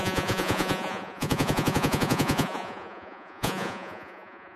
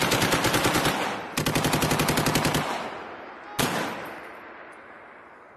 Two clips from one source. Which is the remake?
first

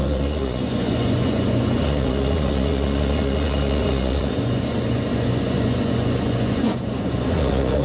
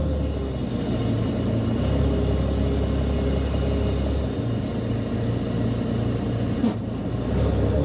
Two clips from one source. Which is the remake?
first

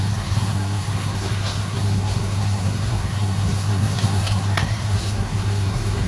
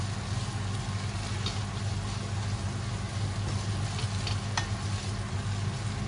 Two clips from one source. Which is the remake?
first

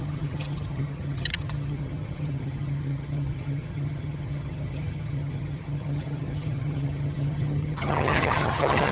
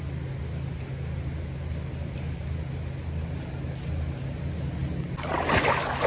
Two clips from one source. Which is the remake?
first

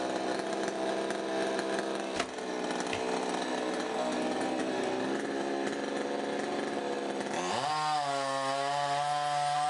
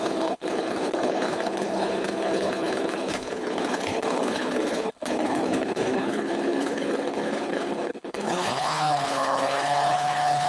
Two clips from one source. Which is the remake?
second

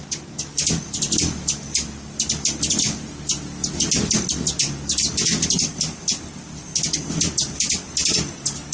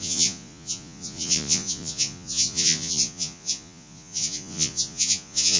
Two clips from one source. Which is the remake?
second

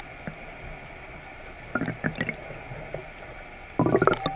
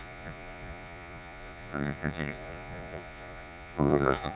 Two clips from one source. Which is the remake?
second